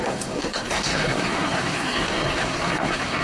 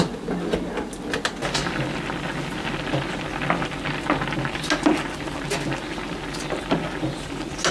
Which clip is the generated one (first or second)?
first